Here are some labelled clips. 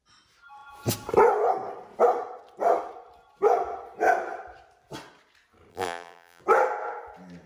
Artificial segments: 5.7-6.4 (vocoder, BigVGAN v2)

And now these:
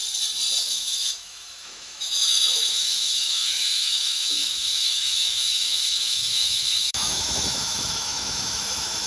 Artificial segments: 0.6-9.1 (autoencoder, DAC-VAE)